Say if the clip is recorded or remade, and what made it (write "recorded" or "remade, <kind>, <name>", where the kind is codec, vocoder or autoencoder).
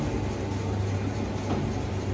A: recorded